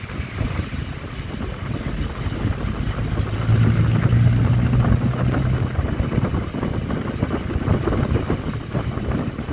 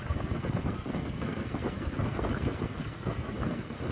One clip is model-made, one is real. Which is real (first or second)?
first